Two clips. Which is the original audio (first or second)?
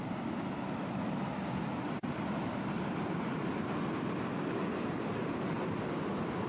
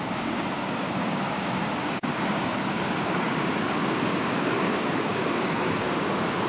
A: first